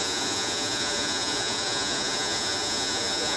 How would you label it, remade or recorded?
remade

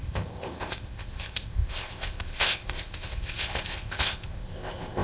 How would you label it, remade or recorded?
remade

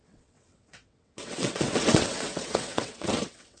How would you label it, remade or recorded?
remade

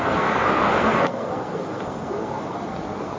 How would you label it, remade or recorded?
remade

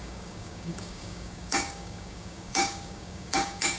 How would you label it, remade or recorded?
remade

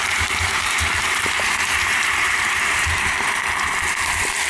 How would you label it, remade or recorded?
remade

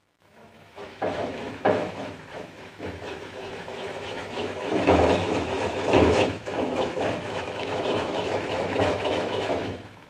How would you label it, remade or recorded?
remade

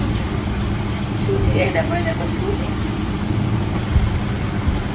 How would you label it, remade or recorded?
recorded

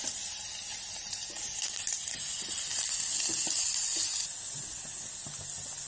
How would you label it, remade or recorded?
recorded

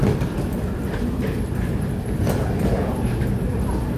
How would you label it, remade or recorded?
remade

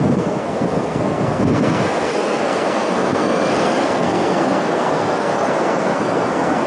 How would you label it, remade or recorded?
remade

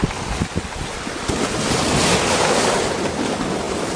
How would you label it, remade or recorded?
recorded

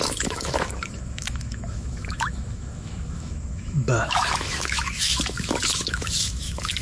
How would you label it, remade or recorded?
remade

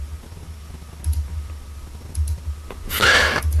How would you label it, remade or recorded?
recorded